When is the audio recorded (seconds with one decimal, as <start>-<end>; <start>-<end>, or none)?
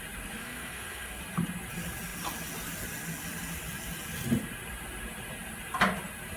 0.0-0.4; 1.2-6.4